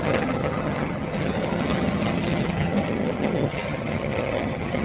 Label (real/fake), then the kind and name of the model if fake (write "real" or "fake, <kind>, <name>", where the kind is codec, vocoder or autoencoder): fake, vocoder, HiFi-GAN